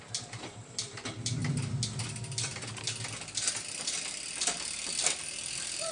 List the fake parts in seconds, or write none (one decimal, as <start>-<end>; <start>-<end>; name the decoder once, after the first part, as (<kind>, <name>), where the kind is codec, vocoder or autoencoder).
0.0-1.4 (vocoder, BigVGAN v2); 4.9-5.9